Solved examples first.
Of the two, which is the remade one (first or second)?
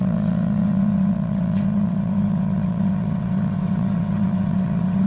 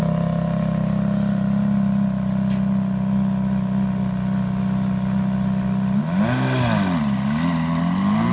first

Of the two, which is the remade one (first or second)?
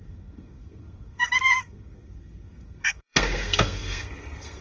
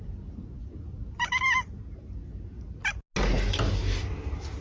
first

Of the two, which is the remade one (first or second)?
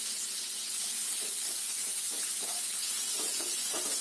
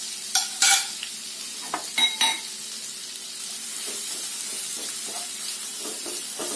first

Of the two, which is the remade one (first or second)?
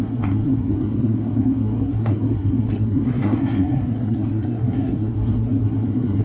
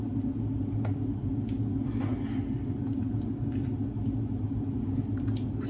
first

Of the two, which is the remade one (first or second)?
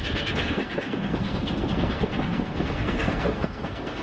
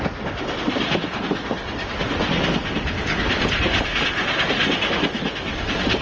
first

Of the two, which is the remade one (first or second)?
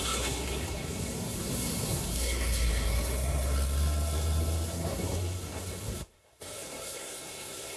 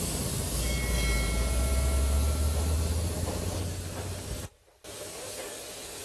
first